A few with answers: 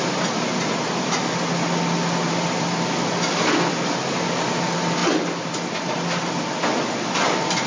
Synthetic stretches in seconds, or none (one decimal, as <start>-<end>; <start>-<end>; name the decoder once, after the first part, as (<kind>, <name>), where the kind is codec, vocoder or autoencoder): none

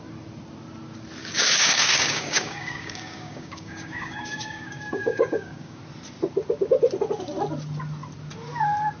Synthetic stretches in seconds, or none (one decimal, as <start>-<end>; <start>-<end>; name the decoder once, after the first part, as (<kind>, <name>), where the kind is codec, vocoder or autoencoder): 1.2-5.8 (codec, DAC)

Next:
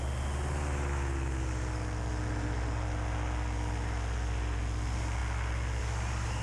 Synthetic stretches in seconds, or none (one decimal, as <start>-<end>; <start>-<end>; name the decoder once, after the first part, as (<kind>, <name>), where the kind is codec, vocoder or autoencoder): none

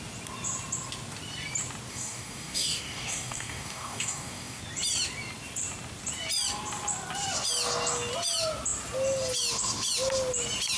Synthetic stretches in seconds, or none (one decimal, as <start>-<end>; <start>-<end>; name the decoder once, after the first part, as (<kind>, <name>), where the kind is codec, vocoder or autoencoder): 1.9-4.6 (codec, DAC)

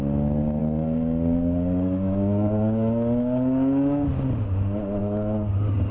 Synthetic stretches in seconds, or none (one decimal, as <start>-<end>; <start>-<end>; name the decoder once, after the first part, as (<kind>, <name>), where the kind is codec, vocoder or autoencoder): 0.6-4.1 (codec, DAC); 5.0-5.9

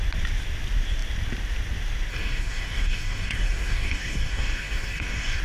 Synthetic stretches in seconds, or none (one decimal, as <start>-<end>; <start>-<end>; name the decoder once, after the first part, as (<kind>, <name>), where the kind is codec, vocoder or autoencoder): 2.1-5.4 (codec, DAC)

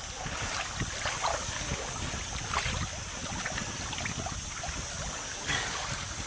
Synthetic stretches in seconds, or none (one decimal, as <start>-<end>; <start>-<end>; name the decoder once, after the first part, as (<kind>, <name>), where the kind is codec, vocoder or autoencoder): 1.3-2.1 (codec, DAC); 5.3-6.3